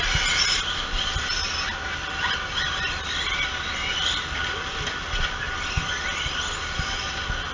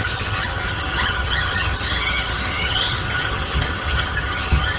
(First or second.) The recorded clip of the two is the first